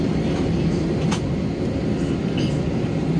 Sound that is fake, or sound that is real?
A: real